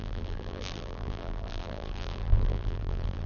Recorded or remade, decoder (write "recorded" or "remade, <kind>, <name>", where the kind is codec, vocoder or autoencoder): remade, vocoder, BigVGAN v2